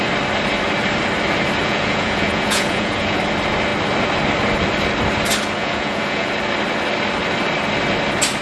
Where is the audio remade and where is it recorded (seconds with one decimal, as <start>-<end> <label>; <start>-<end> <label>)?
0.0-1.6 recorded; 1.6-3.2 remade; 3.2-5.6 recorded; 5.6-6.3 remade; 6.3-8.4 recorded